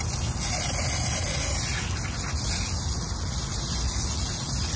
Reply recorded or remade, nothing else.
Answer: recorded